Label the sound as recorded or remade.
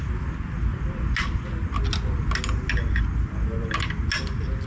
recorded